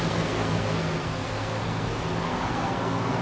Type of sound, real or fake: fake